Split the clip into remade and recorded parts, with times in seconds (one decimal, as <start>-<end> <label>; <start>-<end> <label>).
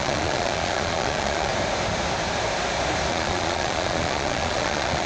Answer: 0.0-1.5 remade; 1.5-3.1 recorded; 3.1-5.1 remade